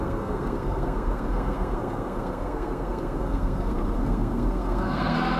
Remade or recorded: remade